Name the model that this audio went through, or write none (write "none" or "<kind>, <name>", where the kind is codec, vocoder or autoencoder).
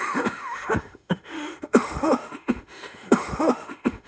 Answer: autoencoder, DAC-VAE